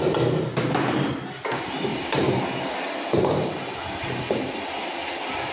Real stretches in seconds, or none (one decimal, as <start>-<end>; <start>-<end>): 0.0-5.5